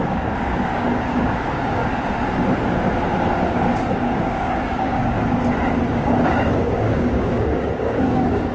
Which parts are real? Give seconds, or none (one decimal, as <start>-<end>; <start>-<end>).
1.8-3.5; 5.2-5.9